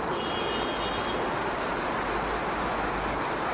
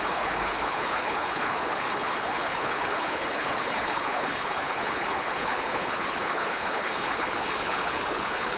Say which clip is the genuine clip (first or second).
first